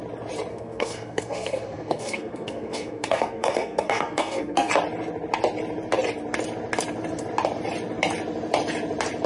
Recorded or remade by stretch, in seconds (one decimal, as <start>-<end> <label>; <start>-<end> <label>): 0.0-0.5 recorded; 0.5-4.7 remade; 4.7-9.3 recorded